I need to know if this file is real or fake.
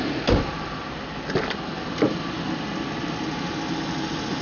real